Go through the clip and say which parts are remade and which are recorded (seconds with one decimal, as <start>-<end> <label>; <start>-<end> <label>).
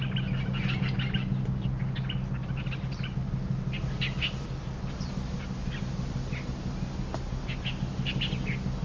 0.0-8.8 recorded